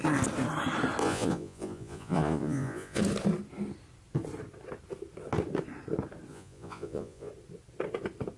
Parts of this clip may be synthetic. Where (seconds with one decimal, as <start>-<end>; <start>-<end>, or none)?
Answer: 1.0-3.0; 6.3-7.3